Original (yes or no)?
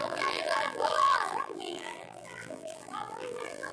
no